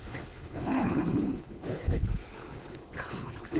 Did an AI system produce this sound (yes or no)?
yes